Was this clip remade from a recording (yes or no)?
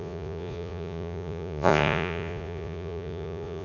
yes